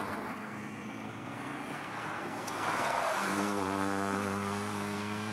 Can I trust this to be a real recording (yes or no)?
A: no